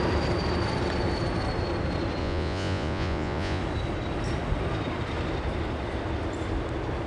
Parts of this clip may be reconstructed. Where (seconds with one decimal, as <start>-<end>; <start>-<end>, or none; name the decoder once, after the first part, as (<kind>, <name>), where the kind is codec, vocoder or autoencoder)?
2.2-3.6 (vocoder, Vocos)

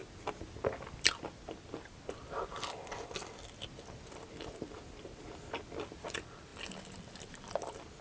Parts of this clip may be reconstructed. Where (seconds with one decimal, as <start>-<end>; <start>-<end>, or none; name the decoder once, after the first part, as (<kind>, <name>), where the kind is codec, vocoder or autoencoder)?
none

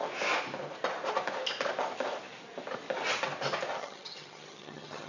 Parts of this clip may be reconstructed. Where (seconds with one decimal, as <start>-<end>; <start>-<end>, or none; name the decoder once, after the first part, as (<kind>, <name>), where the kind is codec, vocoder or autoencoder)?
3.8-5.1 (vocoder, HiFi-GAN)

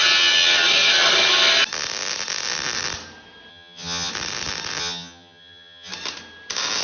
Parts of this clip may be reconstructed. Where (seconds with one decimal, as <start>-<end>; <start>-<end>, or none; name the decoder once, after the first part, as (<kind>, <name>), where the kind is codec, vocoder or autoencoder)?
3.5-4.1 (vocoder, HiFi-GAN); 4.8-5.9

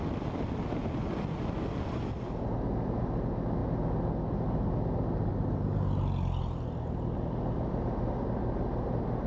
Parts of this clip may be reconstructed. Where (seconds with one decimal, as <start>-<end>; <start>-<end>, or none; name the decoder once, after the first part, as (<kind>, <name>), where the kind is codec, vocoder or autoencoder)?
none

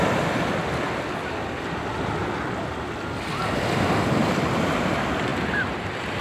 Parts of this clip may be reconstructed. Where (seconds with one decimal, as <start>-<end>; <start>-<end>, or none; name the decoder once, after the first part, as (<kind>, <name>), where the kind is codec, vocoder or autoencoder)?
none

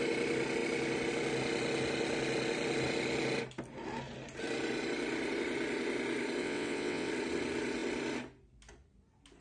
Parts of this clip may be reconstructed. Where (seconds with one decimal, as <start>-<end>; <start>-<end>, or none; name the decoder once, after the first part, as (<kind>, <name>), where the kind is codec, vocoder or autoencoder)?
6.4-7.1 (vocoder, WaveNeXt)

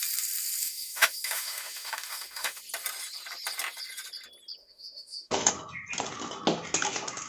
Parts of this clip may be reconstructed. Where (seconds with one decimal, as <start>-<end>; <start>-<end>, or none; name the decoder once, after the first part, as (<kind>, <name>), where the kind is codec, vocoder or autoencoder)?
0.6-2.6 (autoencoder, DAC-VAE); 4.6-5.5